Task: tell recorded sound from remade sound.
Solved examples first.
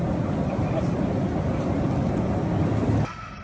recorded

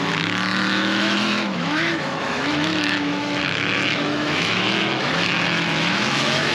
remade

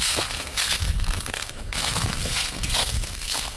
remade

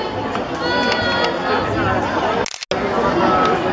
recorded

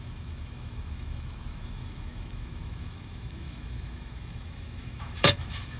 remade